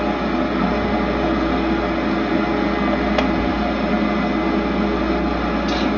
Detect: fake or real real